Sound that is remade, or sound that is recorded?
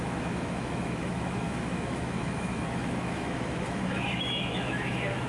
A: remade